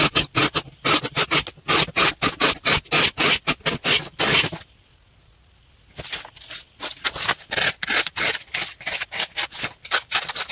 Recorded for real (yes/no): yes